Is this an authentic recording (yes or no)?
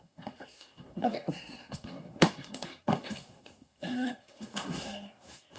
no